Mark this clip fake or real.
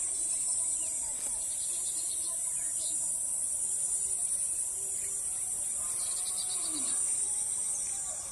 fake